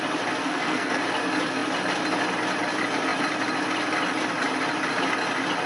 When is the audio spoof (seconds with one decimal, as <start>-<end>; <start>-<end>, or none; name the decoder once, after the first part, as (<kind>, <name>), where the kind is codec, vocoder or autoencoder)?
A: 0.4-1.0 (codec, SNAC)